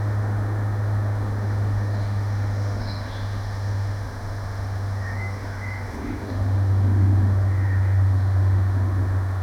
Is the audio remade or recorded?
remade